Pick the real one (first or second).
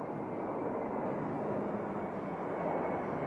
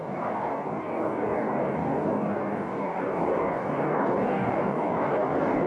first